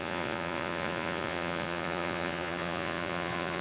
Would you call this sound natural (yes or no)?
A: no